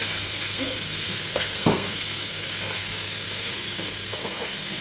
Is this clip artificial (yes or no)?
yes